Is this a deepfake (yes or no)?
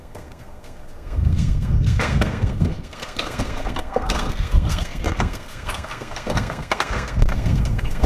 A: yes